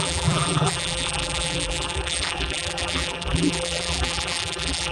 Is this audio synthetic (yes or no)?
yes